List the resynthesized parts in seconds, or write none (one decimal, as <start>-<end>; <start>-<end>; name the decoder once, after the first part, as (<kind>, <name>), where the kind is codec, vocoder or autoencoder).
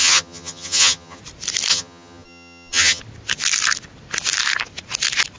0.0-1.2 (vocoder, HiFi-GAN); 1.7-3.0